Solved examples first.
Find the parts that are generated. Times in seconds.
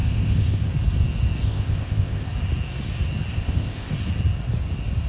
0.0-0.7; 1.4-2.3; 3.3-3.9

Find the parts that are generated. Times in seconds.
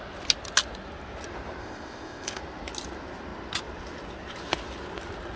1.6-2.4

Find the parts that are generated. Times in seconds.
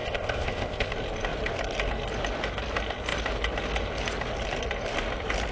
0.0-0.9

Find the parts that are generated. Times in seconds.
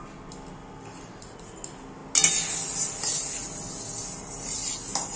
none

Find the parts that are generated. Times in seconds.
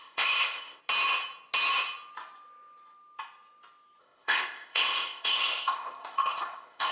0.0-0.8; 4.0-6.9